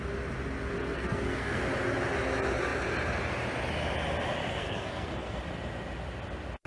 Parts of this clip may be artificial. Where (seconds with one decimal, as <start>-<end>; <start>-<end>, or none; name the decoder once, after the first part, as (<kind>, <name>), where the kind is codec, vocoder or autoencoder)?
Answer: 0.8-1.6 (codec, SNAC); 4.5-5.4